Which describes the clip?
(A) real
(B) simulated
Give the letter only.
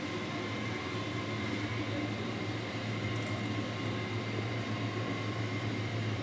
A